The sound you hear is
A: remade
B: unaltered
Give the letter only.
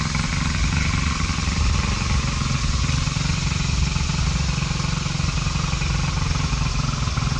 B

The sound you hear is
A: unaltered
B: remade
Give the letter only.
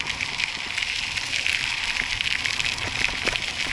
A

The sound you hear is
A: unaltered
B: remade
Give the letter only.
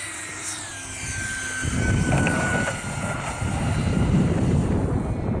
A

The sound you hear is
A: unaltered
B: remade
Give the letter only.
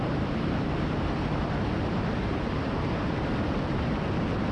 B